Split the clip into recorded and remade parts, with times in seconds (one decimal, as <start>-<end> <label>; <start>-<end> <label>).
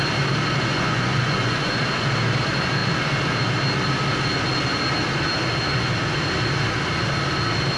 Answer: 0.0-0.7 recorded; 0.7-1.7 remade; 1.7-7.8 recorded